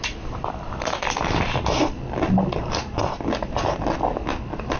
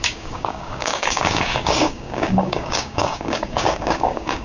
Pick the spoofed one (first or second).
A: second